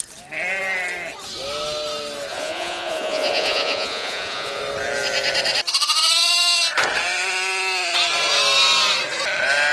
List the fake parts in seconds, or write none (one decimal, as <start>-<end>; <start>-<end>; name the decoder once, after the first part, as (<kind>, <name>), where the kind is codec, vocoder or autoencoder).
2.3-4.6 (vocoder, Vocos)